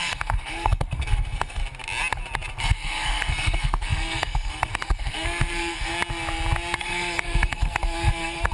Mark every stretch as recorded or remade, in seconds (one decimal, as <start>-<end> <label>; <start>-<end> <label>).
0.0-1.6 remade; 1.6-2.6 recorded; 2.6-5.9 remade; 5.9-6.8 recorded; 6.8-8.5 remade